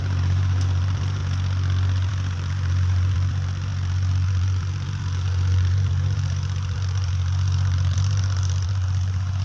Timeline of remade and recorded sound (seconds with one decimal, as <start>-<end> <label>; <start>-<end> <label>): 0.0-1.2 remade; 1.2-2.1 recorded; 2.1-9.4 remade